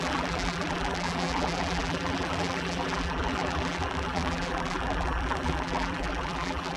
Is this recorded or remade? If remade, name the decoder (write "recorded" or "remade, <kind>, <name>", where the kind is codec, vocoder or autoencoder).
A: remade, vocoder, BigVGAN v2